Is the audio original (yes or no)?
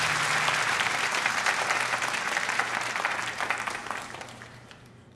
no